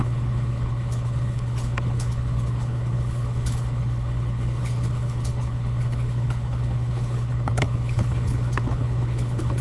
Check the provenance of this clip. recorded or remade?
remade